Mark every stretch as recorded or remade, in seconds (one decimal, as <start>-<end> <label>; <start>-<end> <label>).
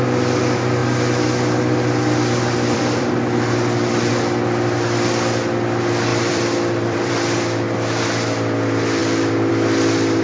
0.0-0.8 recorded; 0.8-4.1 remade; 4.1-6.1 recorded; 6.1-7.1 remade; 7.1-10.2 recorded